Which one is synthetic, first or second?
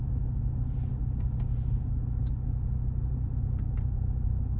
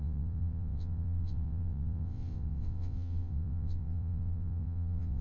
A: second